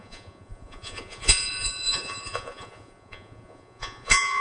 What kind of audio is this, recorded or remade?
remade